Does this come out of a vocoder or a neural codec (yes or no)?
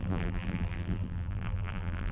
yes